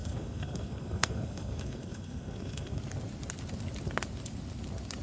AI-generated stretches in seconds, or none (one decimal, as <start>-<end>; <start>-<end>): 0.0-2.8